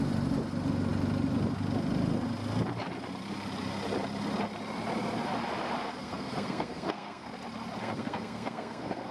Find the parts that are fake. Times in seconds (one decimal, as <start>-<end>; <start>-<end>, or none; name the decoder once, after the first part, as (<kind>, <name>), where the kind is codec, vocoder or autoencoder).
6.0-7.3 (codec, SNAC); 7.8-9.1